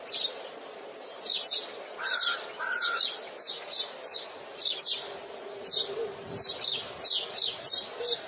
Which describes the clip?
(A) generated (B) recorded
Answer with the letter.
B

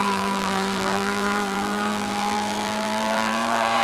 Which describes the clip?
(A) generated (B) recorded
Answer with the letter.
A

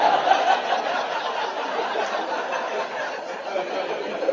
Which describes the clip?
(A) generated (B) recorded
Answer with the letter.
B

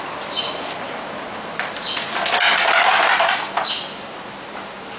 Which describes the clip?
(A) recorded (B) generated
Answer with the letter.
A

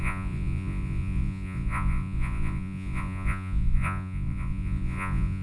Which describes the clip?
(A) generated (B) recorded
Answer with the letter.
A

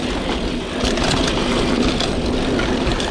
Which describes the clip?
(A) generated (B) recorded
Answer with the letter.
B